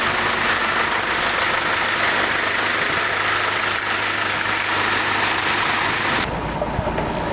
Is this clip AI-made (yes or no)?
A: no